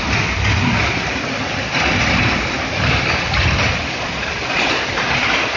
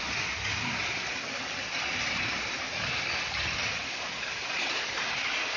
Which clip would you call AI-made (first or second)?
first